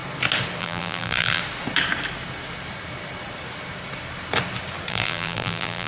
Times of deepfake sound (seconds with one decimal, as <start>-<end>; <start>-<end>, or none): 0.6-1.4; 4.9-5.9